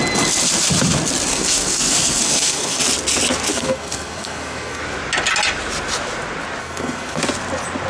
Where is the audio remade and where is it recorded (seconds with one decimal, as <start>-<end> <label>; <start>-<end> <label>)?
0.0-1.3 recorded; 1.3-2.8 remade; 2.8-3.5 recorded; 3.5-4.8 remade; 4.8-6.6 recorded; 6.6-7.2 remade; 7.2-7.9 recorded

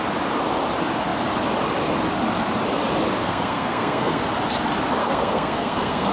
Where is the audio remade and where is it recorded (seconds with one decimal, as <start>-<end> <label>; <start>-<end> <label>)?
0.0-3.2 recorded; 3.2-4.2 remade; 4.2-5.0 recorded; 5.0-6.1 remade

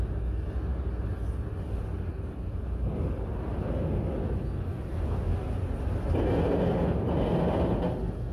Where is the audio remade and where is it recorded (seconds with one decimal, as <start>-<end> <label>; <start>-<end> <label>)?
0.0-8.3 recorded

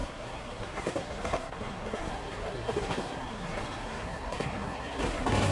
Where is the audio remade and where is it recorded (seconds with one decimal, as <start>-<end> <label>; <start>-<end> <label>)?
0.0-5.5 remade

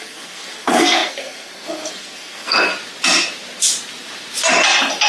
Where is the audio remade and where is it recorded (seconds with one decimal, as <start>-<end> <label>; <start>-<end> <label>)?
0.0-2.7 remade; 2.7-5.1 recorded

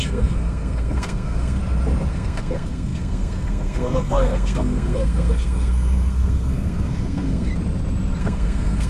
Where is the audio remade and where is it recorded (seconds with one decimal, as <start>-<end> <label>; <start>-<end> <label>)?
0.0-1.6 remade; 1.6-2.1 recorded; 2.1-7.5 remade; 7.5-8.2 recorded; 8.2-8.9 remade

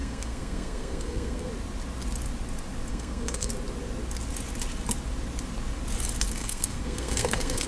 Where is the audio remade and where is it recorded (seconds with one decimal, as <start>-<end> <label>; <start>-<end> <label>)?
0.0-1.5 remade; 1.5-2.9 recorded; 2.9-3.5 remade; 3.5-6.4 recorded; 6.4-7.7 remade

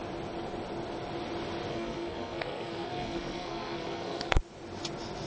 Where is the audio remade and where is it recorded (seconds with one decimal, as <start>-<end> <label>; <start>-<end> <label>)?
0.0-1.7 recorded; 1.7-4.4 remade; 4.4-5.3 recorded